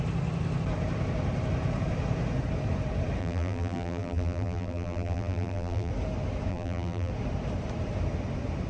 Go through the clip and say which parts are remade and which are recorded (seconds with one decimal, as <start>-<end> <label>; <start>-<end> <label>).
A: 0.0-3.2 recorded; 3.2-5.9 remade; 5.9-6.5 recorded; 6.5-7.1 remade; 7.1-8.7 recorded